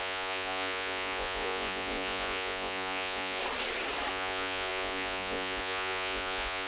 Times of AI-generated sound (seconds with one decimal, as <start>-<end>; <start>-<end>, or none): 0.0-3.4; 4.1-6.7